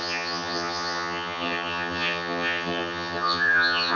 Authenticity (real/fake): fake